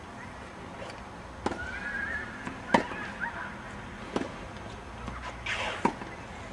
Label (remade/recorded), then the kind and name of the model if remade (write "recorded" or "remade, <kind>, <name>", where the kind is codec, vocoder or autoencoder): recorded